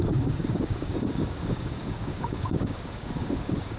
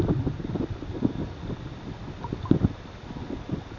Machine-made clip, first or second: first